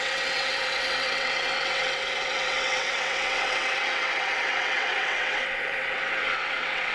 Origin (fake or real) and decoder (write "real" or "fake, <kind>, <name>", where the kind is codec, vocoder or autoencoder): fake, vocoder, WaveNeXt